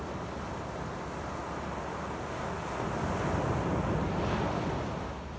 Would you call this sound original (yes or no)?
yes